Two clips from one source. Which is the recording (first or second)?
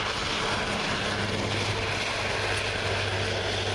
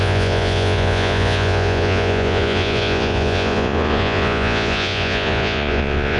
first